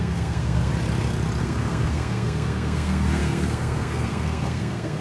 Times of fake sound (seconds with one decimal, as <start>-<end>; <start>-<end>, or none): 0.0-0.7; 1.4-5.0